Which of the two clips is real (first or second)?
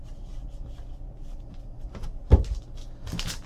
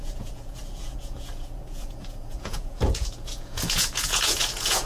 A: first